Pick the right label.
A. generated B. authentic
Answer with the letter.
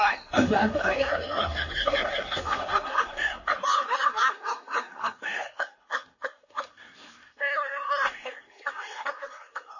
A